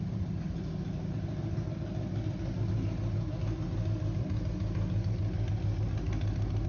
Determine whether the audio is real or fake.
real